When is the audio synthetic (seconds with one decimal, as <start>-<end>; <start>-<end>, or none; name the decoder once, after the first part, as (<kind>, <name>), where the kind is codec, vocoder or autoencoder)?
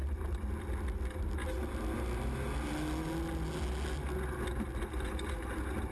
none